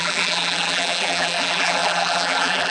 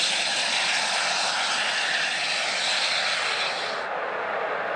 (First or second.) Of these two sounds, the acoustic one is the second